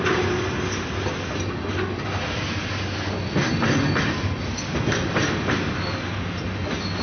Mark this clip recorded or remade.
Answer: recorded